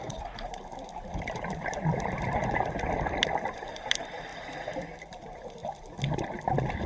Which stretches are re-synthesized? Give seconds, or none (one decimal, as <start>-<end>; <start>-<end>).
0.0-4.3; 4.8-5.6; 6.5-6.9